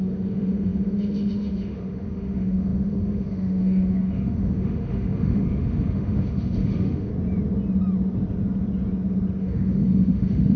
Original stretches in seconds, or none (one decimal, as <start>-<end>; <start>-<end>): 7.1-9.4